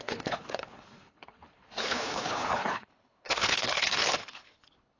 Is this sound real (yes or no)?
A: no